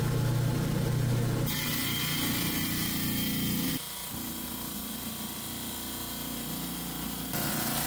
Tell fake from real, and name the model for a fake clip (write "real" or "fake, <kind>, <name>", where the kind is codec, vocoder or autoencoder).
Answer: real